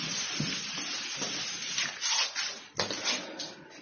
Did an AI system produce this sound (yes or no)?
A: no